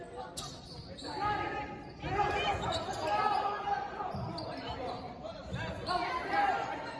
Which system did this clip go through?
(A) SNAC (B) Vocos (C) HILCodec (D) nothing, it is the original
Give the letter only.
D